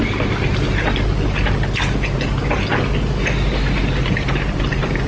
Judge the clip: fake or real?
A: real